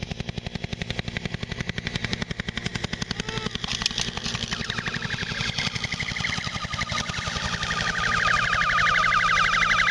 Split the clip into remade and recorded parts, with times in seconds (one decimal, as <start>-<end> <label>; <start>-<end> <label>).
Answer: 0.0-9.9 recorded

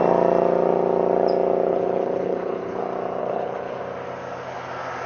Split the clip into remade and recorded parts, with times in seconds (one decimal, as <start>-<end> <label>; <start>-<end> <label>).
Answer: 0.0-1.7 recorded; 1.7-2.8 remade; 2.8-3.2 recorded; 3.2-3.8 remade; 3.8-5.1 recorded